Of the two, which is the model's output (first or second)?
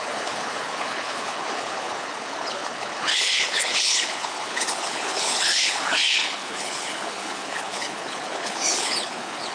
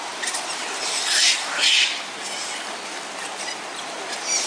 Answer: first